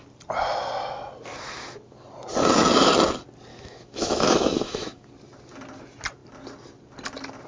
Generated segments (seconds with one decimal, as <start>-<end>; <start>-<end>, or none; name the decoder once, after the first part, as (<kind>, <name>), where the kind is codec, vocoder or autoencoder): 3.5-5.1 (autoencoder, DAC-VAE)